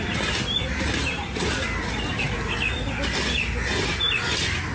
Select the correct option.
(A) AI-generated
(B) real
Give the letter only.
B